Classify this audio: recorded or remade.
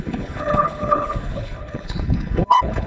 remade